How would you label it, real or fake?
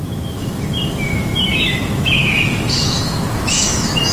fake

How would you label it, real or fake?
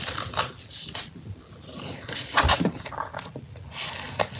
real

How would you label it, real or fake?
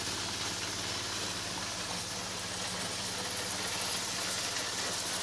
real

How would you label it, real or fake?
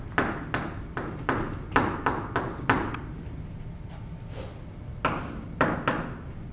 real